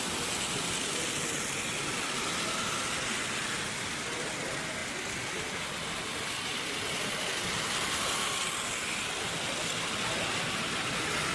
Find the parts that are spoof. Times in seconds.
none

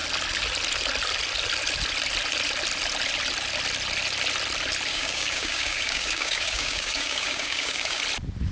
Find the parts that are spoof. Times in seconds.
4.9-8.0 (codec, DAC)

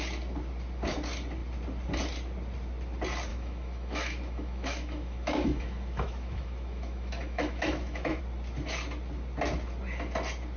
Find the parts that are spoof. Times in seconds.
3.3-8.2 (autoencoder, DAC-VAE)

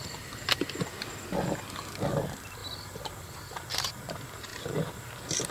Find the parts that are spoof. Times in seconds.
2.6-3.9 (vocoder, BigVGAN v2)

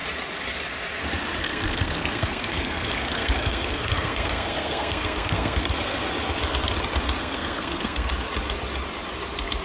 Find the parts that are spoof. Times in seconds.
1.4-6.1 (codec, SNAC); 7.2-8.1

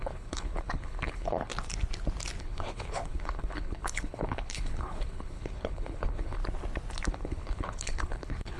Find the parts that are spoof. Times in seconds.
0.0-1.5 (codec, HILCodec); 2.4-6.4; 7.1-8.6

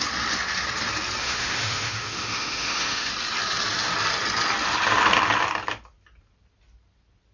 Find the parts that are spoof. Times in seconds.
1.2-3.1 (autoencoder, DAC-VAE)